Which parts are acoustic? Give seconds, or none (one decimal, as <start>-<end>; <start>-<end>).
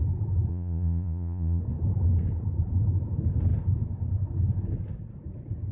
0.0-0.5; 1.6-5.7